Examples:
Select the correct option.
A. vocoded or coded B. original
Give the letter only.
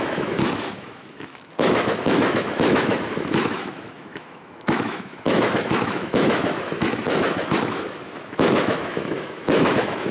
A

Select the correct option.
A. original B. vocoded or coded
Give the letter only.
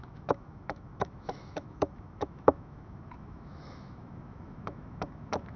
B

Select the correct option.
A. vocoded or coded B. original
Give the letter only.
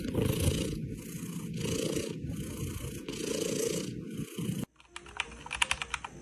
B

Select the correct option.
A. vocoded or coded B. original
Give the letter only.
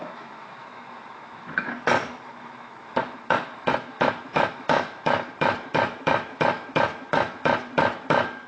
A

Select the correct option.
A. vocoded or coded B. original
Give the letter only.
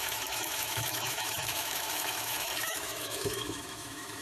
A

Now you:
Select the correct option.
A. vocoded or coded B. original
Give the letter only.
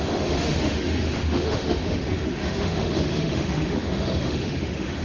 A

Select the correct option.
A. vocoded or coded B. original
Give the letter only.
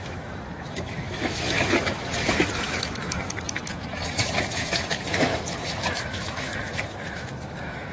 A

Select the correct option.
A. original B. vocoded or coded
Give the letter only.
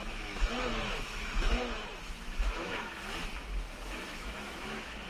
B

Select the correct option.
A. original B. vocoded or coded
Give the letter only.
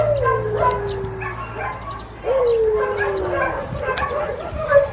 A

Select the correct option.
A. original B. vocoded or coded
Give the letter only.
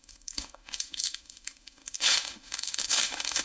B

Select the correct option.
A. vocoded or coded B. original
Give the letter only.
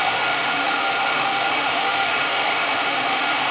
A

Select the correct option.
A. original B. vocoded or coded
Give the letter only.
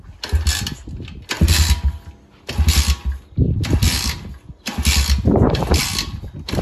A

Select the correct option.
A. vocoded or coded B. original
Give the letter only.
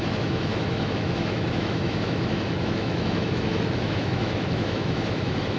A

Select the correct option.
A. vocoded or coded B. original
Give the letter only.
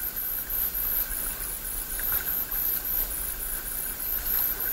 B